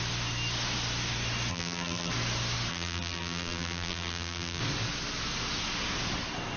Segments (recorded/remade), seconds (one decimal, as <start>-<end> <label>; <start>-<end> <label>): 0.0-1.5 recorded; 1.5-2.1 remade; 2.1-2.7 recorded; 2.7-4.6 remade; 4.6-6.6 recorded